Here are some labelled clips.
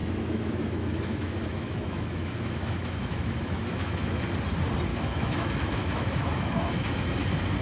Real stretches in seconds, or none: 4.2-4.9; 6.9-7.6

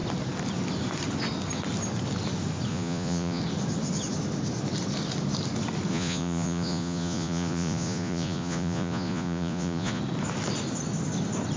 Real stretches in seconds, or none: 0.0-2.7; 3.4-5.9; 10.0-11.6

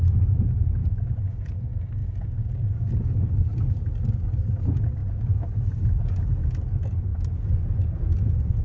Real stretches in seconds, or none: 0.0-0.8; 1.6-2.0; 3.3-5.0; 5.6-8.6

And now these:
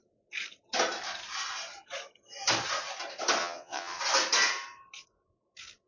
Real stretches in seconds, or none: 0.0-3.4; 4.0-5.9

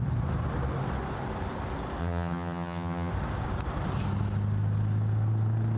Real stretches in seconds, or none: 0.0-2.0; 3.1-5.8